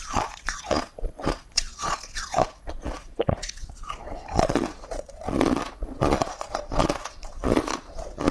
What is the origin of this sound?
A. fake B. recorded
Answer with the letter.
A